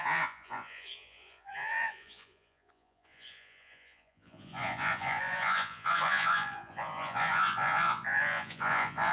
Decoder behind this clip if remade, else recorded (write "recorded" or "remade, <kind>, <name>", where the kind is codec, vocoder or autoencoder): remade, vocoder, Vocos